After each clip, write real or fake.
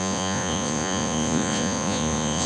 fake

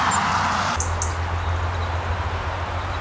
real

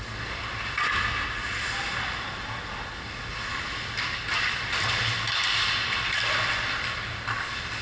real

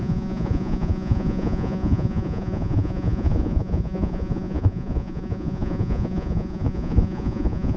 fake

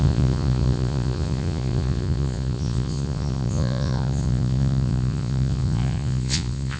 fake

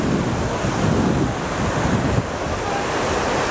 real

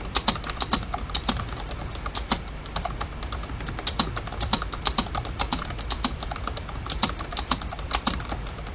real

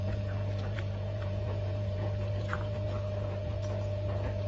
fake